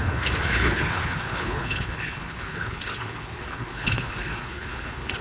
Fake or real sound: fake